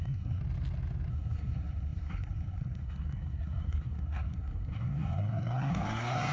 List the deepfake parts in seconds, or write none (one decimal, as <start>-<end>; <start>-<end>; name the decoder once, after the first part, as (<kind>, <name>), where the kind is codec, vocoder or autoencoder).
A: 0.0-0.4 (codec, SNAC); 1.1-6.3